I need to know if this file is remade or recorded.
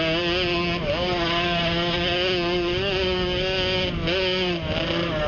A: recorded